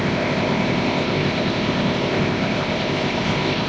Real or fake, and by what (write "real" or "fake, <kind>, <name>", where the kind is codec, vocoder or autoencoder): fake, codec, ZipCodec